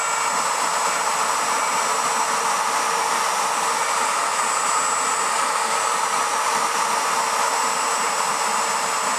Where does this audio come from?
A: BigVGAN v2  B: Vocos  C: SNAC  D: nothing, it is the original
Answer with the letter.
D